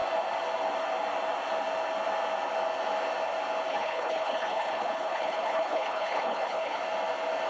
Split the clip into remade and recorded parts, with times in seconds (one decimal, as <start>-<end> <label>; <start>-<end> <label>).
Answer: 0.0-3.7 recorded; 3.7-6.8 remade; 6.8-7.5 recorded

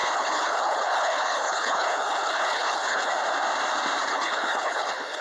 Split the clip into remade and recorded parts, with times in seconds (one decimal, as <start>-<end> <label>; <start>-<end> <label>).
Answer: 0.0-3.1 remade; 3.1-4.1 recorded; 4.1-5.2 remade

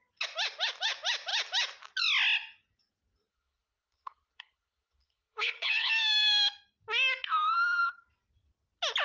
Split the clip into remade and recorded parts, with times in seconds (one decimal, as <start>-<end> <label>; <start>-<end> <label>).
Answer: 0.0-3.3 recorded; 3.3-5.9 remade; 5.9-9.0 recorded

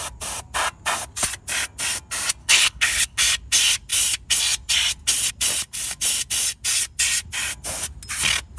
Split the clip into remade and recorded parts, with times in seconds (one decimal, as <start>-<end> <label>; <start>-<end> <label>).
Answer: 0.0-2.4 recorded; 2.4-3.2 remade; 3.2-8.6 recorded